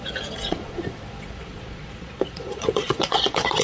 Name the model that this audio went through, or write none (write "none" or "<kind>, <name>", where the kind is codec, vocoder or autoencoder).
vocoder, Vocos